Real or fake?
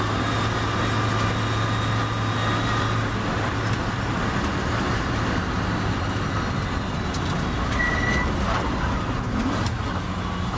real